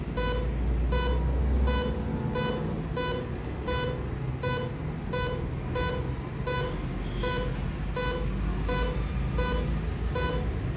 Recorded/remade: recorded